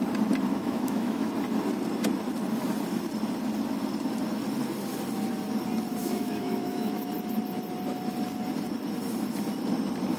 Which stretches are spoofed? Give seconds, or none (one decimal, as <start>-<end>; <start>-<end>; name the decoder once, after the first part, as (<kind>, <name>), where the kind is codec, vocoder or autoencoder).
0.5-1.3 (autoencoder, DAC-VAE); 6.0-7.1